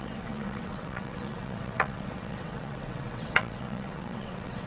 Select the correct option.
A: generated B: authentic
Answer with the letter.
A